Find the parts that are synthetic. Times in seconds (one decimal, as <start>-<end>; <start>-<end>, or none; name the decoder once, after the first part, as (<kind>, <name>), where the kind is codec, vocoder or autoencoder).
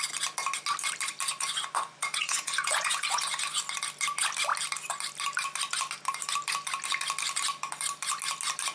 1.3-3.6 (vocoder, Vocos)